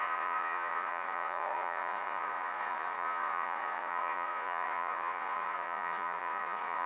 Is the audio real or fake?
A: fake